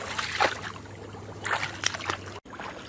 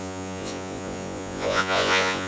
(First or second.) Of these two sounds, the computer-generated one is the second